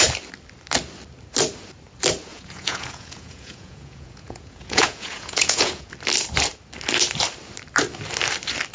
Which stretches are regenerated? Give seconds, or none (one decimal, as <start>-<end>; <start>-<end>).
2.3-5.9